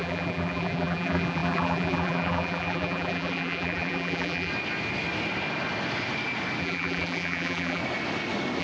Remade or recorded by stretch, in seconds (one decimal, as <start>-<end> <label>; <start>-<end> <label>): 0.0-4.5 remade; 4.5-6.6 recorded; 6.6-7.8 remade; 7.8-8.6 recorded